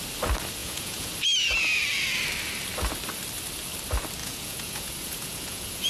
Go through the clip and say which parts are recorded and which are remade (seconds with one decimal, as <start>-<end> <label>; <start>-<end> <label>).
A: 0.0-0.6 recorded; 0.6-1.1 remade; 1.1-4.2 recorded; 4.2-5.9 remade